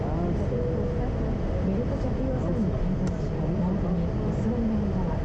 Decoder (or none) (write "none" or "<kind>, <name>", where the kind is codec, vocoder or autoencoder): none